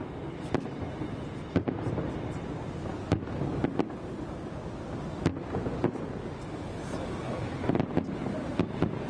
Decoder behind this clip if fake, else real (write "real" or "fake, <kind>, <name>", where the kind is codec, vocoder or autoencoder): real